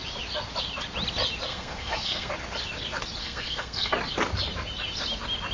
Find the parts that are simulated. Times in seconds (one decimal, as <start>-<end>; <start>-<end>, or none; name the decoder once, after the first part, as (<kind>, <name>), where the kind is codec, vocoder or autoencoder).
1.5-2.3 (codec, SNAC); 3.2-3.9